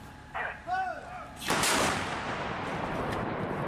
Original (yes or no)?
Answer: yes